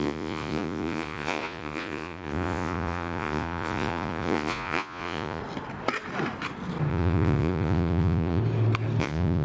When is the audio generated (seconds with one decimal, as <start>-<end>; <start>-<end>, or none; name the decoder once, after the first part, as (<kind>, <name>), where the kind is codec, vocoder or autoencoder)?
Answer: 0.0-5.4 (vocoder, Vocos); 6.9-8.4; 9.0-9.4